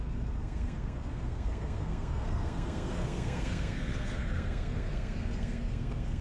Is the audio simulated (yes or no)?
yes